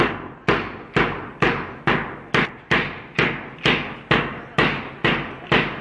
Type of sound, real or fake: real